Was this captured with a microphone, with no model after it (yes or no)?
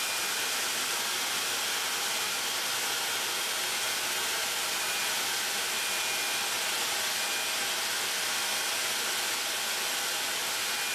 yes